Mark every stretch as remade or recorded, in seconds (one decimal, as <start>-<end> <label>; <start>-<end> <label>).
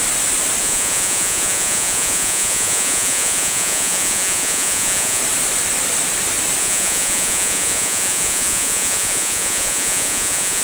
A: 0.0-0.6 recorded; 0.6-5.2 remade; 5.2-6.6 recorded; 6.6-10.6 remade